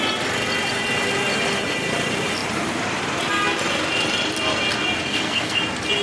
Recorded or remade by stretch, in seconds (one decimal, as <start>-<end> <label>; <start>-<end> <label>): 0.0-5.1 recorded; 5.1-5.6 remade; 5.6-6.0 recorded